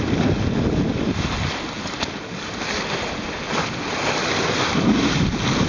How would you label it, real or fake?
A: real